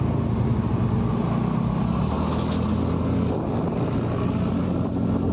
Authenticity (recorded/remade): recorded